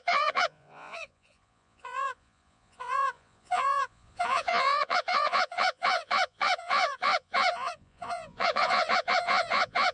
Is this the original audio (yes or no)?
no